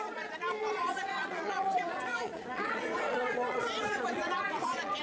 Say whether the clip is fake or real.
fake